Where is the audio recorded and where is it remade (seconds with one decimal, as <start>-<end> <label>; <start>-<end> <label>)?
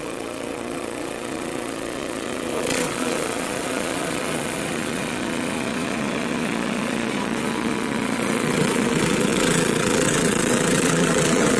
0.0-11.6 remade